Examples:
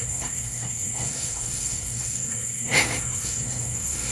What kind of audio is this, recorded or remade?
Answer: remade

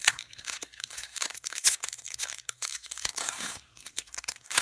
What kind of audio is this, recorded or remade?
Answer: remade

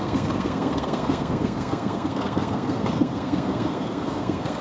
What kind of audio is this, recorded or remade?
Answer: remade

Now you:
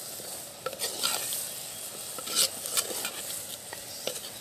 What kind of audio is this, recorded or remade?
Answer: recorded